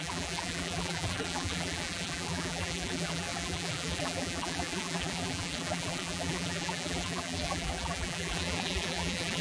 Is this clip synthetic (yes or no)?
yes